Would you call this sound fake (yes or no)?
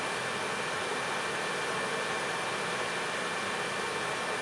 no